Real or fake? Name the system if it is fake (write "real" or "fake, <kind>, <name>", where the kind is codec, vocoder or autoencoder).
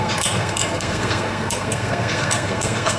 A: fake, codec, SNAC